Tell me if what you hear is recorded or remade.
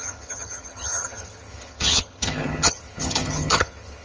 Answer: remade